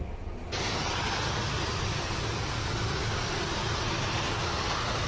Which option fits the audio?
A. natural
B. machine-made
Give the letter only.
A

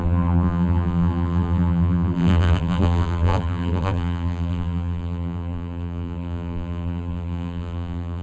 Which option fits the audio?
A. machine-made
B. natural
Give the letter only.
A